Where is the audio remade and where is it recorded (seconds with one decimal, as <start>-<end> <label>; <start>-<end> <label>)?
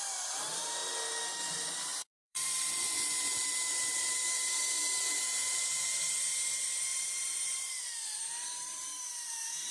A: 0.0-0.8 remade; 0.8-1.5 recorded; 1.5-9.7 remade